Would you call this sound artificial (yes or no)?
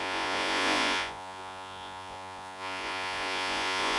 yes